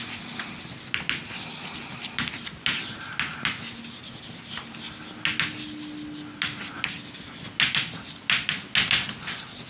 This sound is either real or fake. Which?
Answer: real